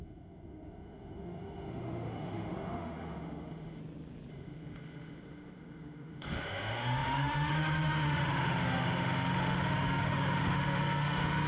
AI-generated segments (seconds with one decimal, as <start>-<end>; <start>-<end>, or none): 0.0-3.8; 4.3-11.5